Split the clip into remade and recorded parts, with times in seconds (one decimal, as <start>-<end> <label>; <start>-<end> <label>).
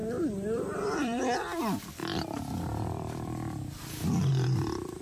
0.0-1.2 remade; 1.2-2.0 recorded; 2.0-5.0 remade